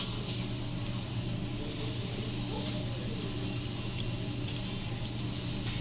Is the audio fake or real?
real